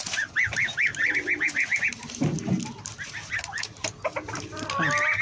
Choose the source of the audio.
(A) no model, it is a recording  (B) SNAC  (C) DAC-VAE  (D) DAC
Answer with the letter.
A